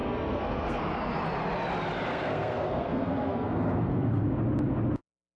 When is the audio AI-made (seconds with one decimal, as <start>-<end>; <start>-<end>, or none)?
0.0-0.8; 2.1-4.3